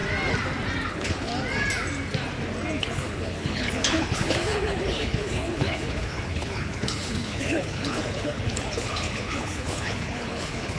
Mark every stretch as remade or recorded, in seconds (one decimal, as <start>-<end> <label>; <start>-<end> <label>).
0.0-0.9 recorded; 0.9-1.3 remade; 1.3-2.8 recorded; 2.8-10.8 remade

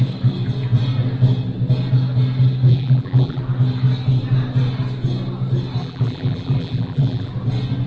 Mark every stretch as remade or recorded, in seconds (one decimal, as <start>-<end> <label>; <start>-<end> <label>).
0.0-2.7 recorded; 2.7-3.4 remade; 3.4-5.8 recorded; 5.8-7.3 remade; 7.3-7.9 recorded

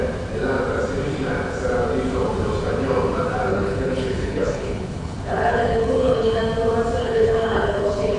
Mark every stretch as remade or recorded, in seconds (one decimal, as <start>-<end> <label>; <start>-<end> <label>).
0.0-3.5 recorded; 3.5-6.4 remade; 6.4-7.0 recorded; 7.0-8.2 remade

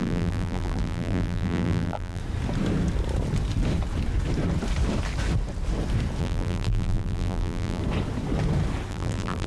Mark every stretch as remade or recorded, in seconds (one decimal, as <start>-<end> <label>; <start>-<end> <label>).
0.0-2.2 remade; 2.2-6.2 recorded; 6.2-7.8 remade; 7.8-8.9 recorded; 8.9-9.5 remade

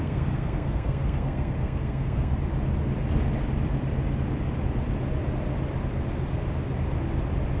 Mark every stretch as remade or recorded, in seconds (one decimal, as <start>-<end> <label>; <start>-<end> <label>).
0.0-2.3 remade; 2.3-7.6 recorded

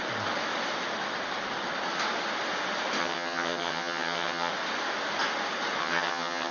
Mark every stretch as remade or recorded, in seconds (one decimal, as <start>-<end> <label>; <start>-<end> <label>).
0.0-3.0 recorded; 3.0-4.5 remade; 4.5-5.8 recorded; 5.8-6.5 remade

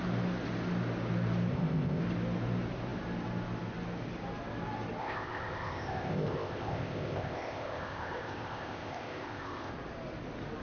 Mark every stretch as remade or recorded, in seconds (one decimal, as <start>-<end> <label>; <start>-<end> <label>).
0.0-1.5 recorded; 1.5-2.0 remade; 2.0-5.0 recorded; 5.0-9.7 remade; 9.7-10.6 recorded

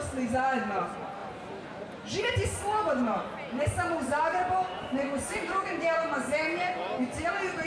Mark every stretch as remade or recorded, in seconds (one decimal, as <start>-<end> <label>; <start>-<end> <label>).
0.0-7.7 recorded